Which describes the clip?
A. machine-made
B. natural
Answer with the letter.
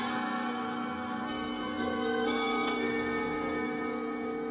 A